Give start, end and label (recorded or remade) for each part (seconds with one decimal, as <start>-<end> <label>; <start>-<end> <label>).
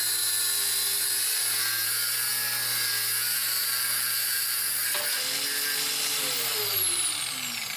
0.0-7.8 recorded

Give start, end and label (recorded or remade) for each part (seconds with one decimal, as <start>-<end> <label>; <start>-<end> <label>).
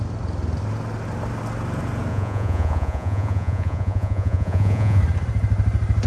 0.0-2.1 recorded; 2.1-5.0 remade; 5.0-6.1 recorded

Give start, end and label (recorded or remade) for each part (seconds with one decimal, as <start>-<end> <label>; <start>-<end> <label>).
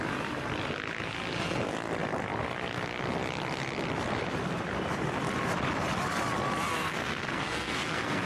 0.0-6.8 recorded; 6.8-8.3 remade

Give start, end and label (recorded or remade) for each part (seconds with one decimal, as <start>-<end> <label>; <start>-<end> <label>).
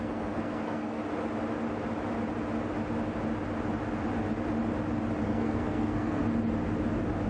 0.0-1.0 remade; 1.0-5.2 recorded; 5.2-6.2 remade; 6.2-7.3 recorded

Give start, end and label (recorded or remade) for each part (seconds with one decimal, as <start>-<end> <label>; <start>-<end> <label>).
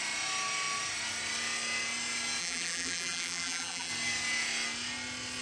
0.0-2.4 recorded; 2.4-3.9 remade; 3.9-5.4 recorded